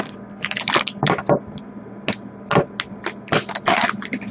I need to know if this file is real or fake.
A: real